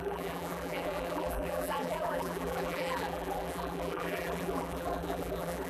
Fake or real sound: fake